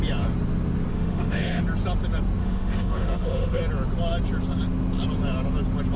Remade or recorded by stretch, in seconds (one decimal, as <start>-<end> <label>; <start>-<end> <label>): 0.0-0.9 recorded; 0.9-1.6 remade; 1.6-2.4 recorded; 2.4-3.6 remade; 3.6-6.0 recorded